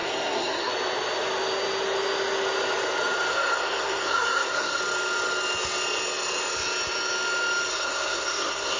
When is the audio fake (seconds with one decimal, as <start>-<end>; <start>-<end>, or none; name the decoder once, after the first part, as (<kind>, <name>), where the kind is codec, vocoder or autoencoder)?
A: 0.0-0.7 (codec, SNAC); 3.3-4.8; 7.7-8.8